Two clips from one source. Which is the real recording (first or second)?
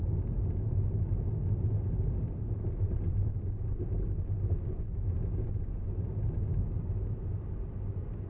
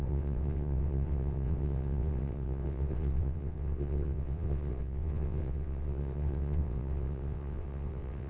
first